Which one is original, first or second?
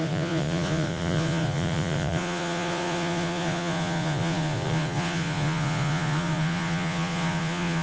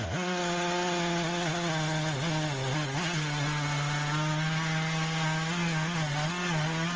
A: second